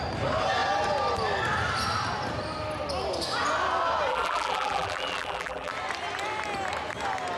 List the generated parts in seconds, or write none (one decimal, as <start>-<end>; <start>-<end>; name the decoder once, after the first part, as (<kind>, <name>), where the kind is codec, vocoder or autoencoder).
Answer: 4.1-5.7 (vocoder, BigVGAN v2)